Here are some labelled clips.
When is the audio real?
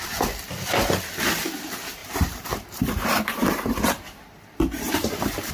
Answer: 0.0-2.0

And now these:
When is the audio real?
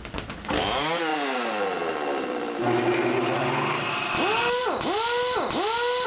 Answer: 0.0-6.1